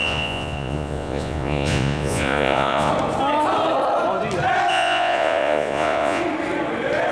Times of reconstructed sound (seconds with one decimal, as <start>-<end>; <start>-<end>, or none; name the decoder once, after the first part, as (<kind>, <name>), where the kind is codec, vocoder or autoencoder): 0.0-2.9 (vocoder, Vocos); 4.7-6.2